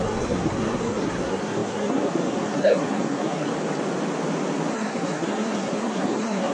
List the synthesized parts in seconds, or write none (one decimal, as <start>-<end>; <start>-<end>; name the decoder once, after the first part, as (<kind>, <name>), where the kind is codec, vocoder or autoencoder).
0.0-3.5 (codec, SNAC); 4.7-6.5